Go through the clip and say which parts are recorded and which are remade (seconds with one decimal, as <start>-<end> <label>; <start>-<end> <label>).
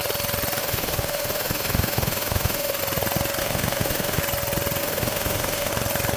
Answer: 0.0-0.6 recorded; 0.6-2.8 remade; 2.8-3.4 recorded; 3.4-4.2 remade; 4.2-4.8 recorded; 4.8-5.7 remade; 5.7-6.2 recorded